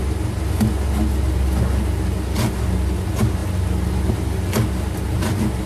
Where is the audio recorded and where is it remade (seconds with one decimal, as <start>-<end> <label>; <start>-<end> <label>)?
0.0-5.7 recorded

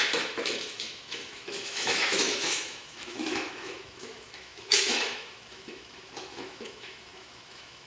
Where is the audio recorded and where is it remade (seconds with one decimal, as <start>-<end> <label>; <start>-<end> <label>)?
0.0-7.9 remade

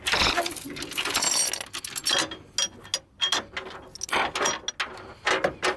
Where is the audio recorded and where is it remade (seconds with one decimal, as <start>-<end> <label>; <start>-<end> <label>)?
0.0-5.8 recorded

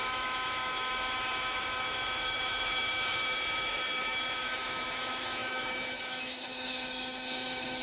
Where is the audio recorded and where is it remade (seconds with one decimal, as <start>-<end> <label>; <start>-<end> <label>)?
0.0-7.8 remade

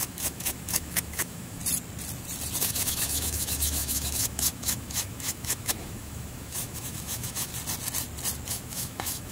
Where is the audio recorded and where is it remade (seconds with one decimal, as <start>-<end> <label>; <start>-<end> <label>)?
0.0-1.6 remade; 1.6-2.6 recorded; 2.6-7.5 remade; 7.5-8.5 recorded; 8.5-9.3 remade

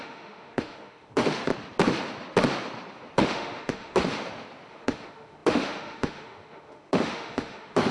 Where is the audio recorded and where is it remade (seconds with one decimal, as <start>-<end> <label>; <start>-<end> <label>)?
0.0-1.5 remade; 1.5-3.2 recorded; 3.2-4.1 remade; 4.1-4.7 recorded; 4.7-7.9 remade

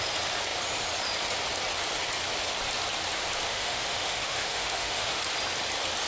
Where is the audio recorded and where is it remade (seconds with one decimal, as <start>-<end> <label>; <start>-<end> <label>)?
0.0-3.5 recorded; 3.5-5.2 remade; 5.2-6.1 recorded